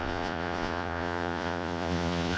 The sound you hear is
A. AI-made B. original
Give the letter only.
A